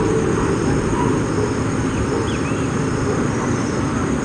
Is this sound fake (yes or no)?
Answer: no